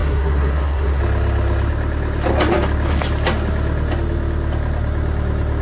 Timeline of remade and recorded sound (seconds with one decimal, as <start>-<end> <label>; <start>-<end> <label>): 0.0-1.0 remade; 1.0-5.6 recorded